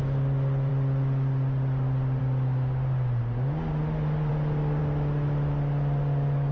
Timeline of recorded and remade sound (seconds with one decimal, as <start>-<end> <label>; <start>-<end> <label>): 0.0-6.5 recorded

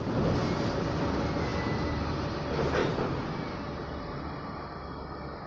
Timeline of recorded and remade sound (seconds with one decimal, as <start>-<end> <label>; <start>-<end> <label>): 0.0-0.4 recorded; 0.4-1.0 remade; 1.0-5.5 recorded

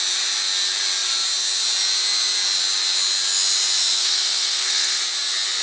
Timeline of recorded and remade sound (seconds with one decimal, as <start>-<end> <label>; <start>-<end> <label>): 0.0-4.0 recorded; 4.0-5.0 remade; 5.0-5.6 recorded

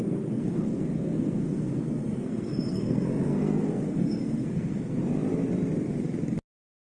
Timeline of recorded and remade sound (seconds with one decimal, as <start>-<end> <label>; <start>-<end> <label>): 0.0-5.0 remade; 5.0-6.9 recorded